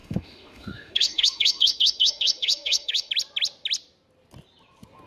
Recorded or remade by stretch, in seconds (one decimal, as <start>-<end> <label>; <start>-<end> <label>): 0.0-3.1 remade; 3.1-5.1 recorded